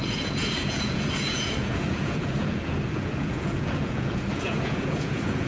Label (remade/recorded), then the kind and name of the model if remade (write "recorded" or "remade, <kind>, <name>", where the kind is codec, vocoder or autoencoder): remade, vocoder, Vocos